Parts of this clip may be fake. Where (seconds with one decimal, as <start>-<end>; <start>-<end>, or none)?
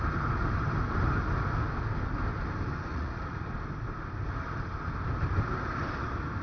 2.9-3.5